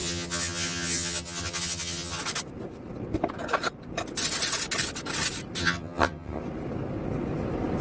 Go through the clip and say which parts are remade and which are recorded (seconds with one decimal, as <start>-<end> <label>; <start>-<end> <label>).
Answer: 0.0-2.2 remade; 2.2-5.6 recorded; 5.6-6.4 remade; 6.4-7.8 recorded